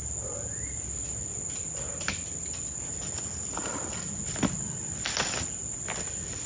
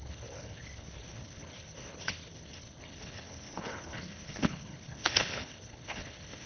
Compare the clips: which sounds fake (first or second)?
second